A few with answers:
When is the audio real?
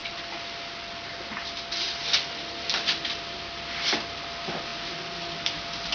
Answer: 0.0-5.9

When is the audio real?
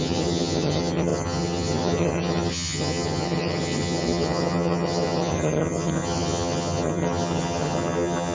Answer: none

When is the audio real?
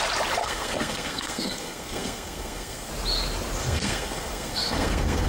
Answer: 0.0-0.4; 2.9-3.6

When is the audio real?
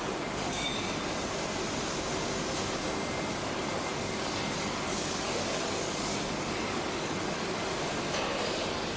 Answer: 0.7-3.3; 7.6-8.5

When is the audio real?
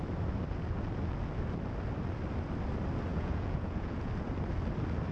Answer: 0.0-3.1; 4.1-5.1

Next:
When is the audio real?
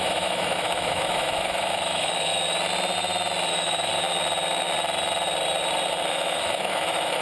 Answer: 2.3-3.5; 3.9-6.1